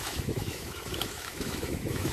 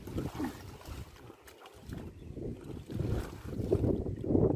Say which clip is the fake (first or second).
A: first